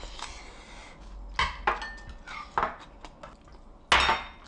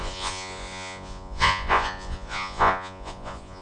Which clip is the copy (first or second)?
second